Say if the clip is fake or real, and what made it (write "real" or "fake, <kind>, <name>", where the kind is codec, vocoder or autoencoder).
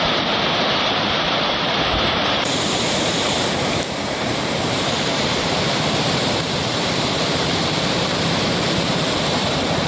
fake, vocoder, BigVGAN v2